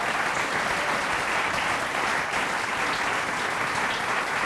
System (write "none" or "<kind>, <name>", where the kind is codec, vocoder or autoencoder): none